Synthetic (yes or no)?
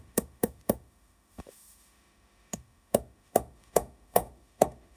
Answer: yes